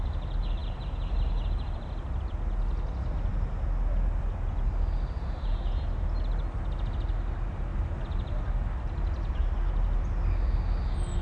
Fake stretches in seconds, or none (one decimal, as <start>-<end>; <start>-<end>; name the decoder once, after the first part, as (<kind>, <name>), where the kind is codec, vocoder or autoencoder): none

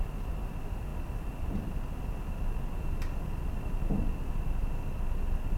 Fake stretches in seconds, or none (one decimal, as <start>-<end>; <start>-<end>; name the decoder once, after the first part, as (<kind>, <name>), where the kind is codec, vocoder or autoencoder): none

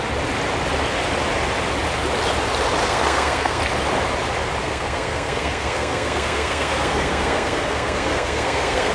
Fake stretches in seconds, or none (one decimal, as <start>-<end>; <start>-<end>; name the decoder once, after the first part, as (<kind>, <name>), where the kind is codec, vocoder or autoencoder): 2.8-3.6 (codec, SNAC); 4.6-8.9

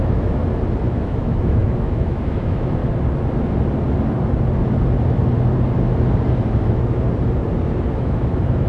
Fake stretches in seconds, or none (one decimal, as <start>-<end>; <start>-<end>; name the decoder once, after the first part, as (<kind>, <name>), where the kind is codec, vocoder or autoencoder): 0.0-0.4 (autoencoder, DAC-VAE); 0.9-2.8; 7.9-8.7

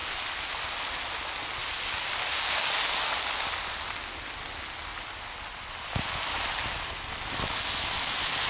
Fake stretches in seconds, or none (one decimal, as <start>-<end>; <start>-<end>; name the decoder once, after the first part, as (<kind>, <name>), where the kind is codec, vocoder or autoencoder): none